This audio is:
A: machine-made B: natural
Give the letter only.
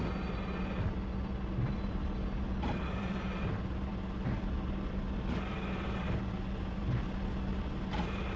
B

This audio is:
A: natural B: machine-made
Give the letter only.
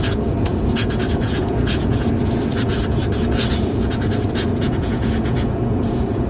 B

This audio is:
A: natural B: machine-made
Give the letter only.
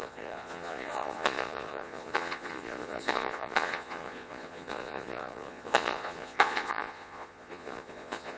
B